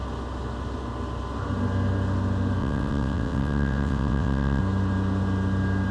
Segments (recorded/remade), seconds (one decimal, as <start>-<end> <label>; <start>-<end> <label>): 0.0-2.6 recorded; 2.6-4.6 remade; 4.6-5.9 recorded